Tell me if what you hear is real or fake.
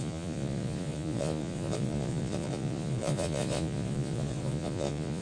fake